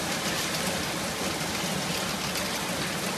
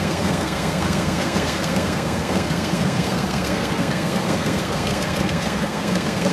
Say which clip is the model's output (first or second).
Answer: second